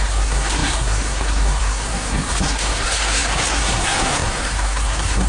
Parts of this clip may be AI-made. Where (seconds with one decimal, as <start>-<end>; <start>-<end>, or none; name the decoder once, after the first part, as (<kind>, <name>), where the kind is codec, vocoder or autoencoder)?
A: 0.0-5.3 (codec, SNAC)